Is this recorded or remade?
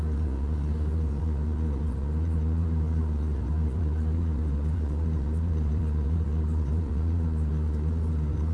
remade